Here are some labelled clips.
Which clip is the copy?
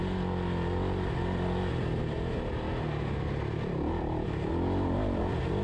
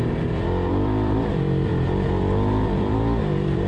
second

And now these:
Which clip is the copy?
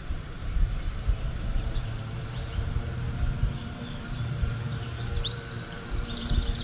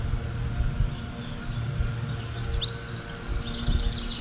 first